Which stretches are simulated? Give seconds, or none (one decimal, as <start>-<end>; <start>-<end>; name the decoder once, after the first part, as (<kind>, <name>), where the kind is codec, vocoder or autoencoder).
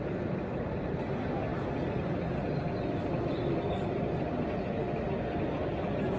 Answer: none